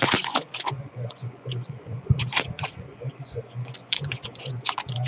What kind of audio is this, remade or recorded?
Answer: remade